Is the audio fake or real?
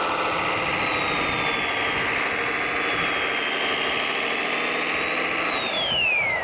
real